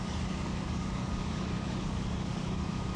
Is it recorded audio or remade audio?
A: remade